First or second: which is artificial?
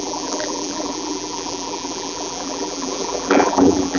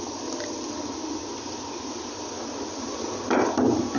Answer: first